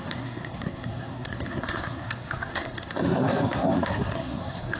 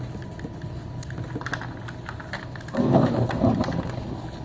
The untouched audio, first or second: second